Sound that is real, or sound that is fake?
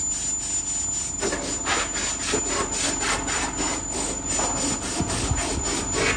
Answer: real